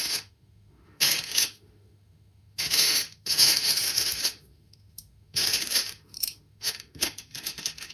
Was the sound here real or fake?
fake